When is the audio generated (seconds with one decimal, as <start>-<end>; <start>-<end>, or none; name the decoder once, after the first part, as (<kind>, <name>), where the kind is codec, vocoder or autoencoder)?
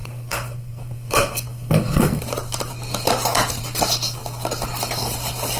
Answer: 0.0-2.2 (codec, SNAC)